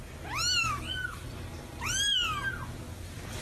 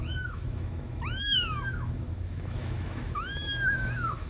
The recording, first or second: first